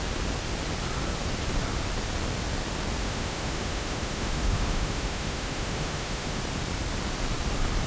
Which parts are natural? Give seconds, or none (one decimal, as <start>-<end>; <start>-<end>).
0.0-3.0; 6.4-7.9